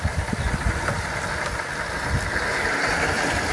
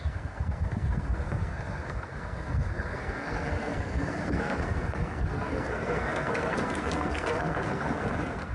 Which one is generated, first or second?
second